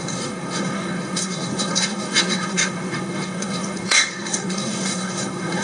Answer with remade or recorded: remade